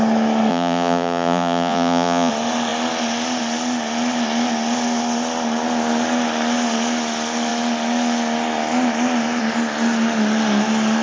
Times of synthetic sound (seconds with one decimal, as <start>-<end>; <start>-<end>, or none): 0.5-2.3